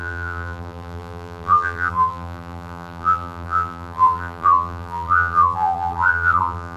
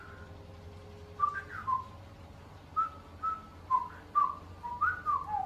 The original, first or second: second